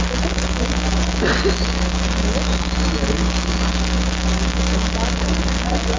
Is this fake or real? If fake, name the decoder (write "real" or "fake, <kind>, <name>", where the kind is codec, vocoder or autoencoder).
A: real